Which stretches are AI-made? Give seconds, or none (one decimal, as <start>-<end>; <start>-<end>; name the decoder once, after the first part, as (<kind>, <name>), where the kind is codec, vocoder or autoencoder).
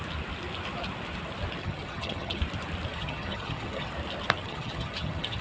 1.6-2.4 (vocoder, HiFi-GAN); 2.9-3.9; 4.4-5.4